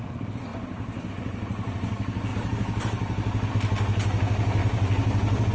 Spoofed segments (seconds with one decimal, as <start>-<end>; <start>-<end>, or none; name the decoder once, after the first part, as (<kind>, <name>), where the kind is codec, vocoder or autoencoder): 0.5-1.1 (vocoder, BigVGAN v2); 2.3-3.5; 4.6-5.5

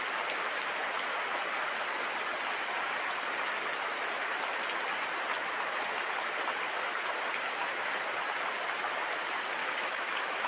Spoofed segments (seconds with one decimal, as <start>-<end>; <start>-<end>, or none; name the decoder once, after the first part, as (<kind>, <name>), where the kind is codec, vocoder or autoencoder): 9.6-10.5 (autoencoder, DAC-VAE)

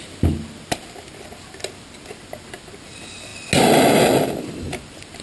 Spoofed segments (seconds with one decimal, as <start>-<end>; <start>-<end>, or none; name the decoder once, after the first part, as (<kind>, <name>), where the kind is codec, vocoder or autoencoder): none

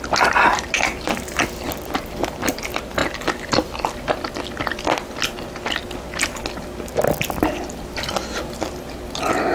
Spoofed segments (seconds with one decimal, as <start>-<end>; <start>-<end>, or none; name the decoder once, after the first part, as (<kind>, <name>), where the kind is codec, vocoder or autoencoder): 0.5-1.4 (vocoder, BigVGAN v2)

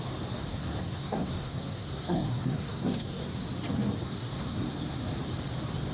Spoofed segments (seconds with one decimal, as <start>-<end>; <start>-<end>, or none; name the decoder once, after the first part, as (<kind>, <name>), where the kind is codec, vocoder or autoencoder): 0.5-3.4 (codec, SNAC); 4.0-5.0

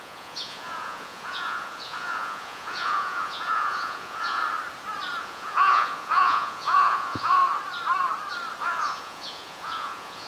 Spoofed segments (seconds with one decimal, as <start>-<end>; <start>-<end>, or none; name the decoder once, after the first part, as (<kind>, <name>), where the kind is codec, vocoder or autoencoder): 0.0-4.4 (vocoder, Vocos); 5.2-7.4; 8.6-10.3

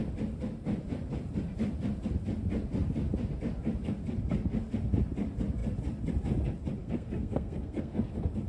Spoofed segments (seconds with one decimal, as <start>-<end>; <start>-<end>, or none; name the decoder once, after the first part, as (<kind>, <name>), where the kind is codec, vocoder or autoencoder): 6.8-8.0 (codec, SNAC)

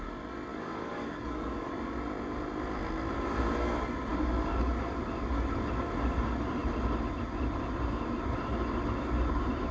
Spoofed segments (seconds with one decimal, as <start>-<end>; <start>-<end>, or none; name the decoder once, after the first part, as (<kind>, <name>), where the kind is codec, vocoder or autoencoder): 0.5-1.7 (codec, DAC)